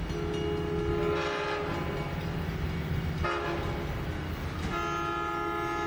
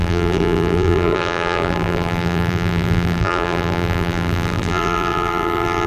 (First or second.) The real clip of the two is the first